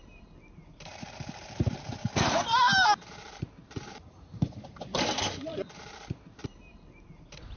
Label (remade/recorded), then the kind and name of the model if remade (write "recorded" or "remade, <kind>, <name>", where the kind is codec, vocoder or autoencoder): remade, vocoder, BigVGAN v2